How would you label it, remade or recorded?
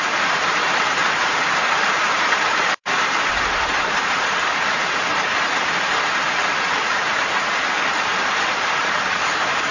remade